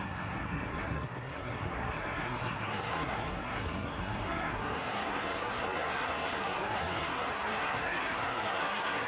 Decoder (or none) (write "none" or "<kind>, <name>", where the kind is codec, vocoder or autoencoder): codec, SNAC